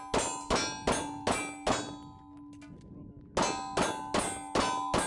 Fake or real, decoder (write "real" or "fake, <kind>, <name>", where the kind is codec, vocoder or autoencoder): real